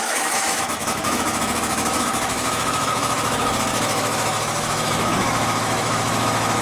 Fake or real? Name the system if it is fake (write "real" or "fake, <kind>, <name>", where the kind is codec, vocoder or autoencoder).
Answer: fake, autoencoder, DAC-VAE